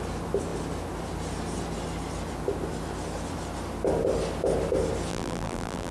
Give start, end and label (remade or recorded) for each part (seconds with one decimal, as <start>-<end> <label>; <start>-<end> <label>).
0.0-5.1 recorded; 5.1-5.9 remade